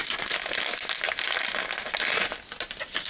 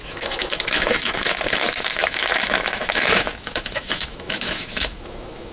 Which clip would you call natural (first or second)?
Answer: first